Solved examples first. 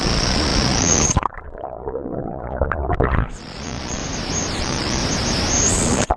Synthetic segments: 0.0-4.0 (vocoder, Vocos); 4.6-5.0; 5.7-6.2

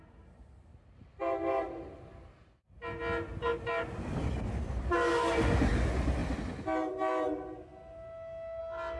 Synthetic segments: none

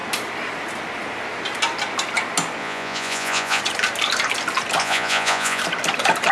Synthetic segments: 2.6-3.6 (vocoder, Vocos); 4.8-5.6

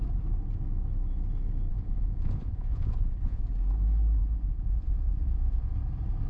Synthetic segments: 1.7-3.4 (vocoder, Vocos); 4.2-5.7